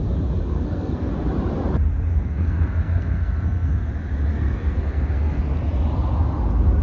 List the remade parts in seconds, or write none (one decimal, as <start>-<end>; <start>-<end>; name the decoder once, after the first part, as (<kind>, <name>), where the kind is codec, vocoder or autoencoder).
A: 0.5-1.1 (codec, SNAC); 2.1-3.9; 4.3-5.4